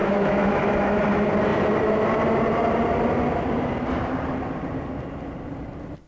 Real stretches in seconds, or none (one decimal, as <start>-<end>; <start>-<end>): 1.0-6.1

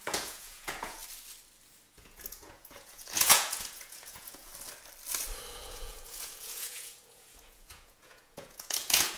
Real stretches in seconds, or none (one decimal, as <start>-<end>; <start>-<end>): 1.0-1.9; 4.5-5.5

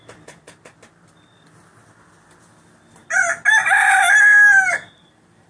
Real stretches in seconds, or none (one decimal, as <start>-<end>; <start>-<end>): 0.0-5.5

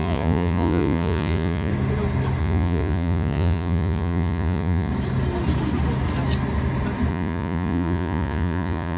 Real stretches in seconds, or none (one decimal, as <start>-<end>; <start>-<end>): 1.7-2.4; 4.9-7.1

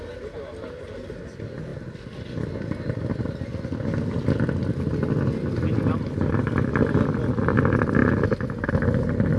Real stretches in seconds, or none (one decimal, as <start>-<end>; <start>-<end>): 0.0-9.4

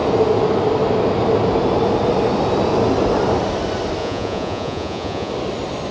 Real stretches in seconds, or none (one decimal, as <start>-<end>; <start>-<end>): 0.0-4.0; 5.3-5.9

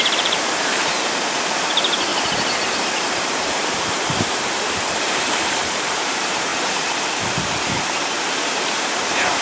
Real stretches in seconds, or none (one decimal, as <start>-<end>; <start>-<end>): 0.9-1.6; 2.1-3.0

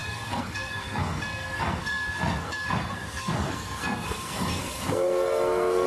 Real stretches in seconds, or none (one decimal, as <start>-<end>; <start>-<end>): none